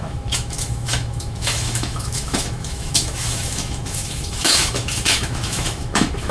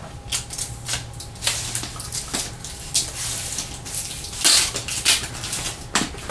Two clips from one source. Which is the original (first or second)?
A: second